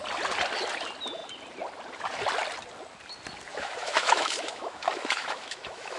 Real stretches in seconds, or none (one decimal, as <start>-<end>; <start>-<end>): 0.0-3.5